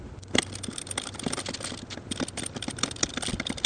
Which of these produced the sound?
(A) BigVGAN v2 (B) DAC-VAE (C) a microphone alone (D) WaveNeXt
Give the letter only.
A